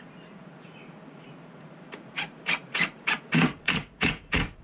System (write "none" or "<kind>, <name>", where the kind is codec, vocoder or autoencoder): vocoder, Vocos